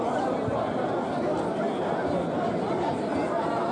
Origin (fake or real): real